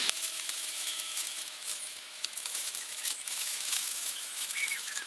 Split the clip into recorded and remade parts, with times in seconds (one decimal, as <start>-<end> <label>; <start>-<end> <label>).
0.0-5.1 remade